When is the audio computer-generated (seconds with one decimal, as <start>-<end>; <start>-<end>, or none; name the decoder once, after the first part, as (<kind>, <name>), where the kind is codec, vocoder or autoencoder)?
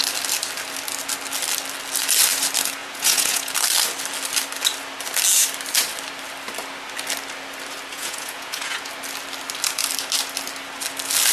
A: 2.8-3.5 (vocoder, Vocos); 7.9-8.9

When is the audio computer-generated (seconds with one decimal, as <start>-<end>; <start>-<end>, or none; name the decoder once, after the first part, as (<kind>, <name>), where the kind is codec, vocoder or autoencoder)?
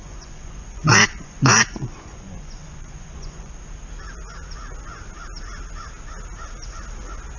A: 0.0-3.5 (vocoder, Vocos)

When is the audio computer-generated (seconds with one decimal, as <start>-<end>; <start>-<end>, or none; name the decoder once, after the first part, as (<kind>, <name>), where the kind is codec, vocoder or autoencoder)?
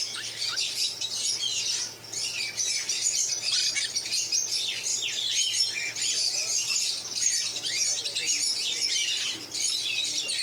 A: 4.9-8.0 (vocoder, BigVGAN v2)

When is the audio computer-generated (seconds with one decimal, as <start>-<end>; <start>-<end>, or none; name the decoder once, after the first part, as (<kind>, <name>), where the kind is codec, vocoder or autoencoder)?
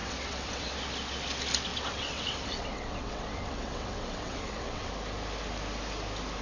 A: 0.0-0.7 (vocoder, WaveNeXt); 1.7-4.9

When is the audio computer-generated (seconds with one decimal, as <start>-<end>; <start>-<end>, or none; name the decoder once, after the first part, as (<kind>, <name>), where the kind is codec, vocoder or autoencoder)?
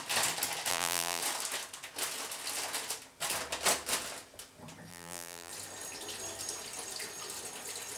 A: 0.7-1.2 (vocoder, BigVGAN v2); 4.9-5.5